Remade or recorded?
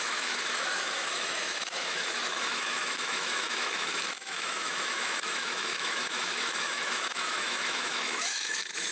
remade